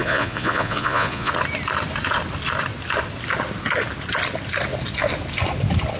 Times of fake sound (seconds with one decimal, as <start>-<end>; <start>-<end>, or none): 0.0-1.3